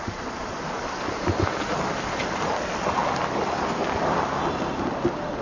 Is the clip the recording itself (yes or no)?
yes